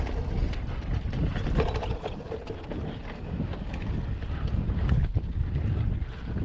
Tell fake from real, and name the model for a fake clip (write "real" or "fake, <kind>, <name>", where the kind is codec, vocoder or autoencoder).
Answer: real